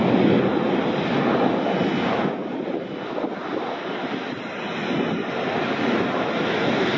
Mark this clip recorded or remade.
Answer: recorded